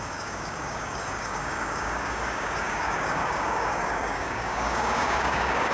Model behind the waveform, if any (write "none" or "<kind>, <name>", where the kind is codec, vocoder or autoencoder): codec, DAC